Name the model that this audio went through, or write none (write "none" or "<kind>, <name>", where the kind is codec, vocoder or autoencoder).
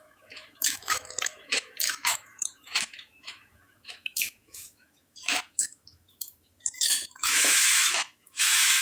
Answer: autoencoder, DAC-VAE